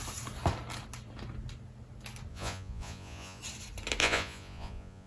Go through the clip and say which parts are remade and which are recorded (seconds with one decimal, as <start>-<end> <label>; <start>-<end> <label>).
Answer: 0.0-2.3 recorded; 2.3-3.4 remade; 3.4-4.0 recorded; 4.0-5.1 remade